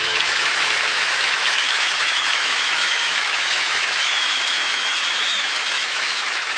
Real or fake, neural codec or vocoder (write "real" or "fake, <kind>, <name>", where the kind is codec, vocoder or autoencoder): fake, autoencoder, DAC-VAE